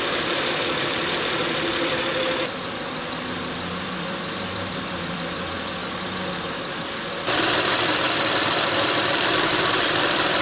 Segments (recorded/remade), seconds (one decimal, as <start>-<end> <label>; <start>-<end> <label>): 0.0-5.8 remade; 5.8-7.3 recorded; 7.3-10.4 remade